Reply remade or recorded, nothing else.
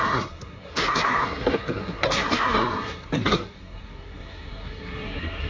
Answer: remade